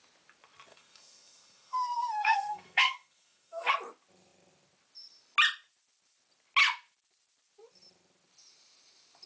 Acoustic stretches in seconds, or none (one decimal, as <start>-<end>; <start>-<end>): 0.0-0.7; 3.7-9.3